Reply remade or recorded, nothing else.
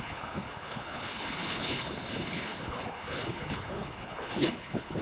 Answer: remade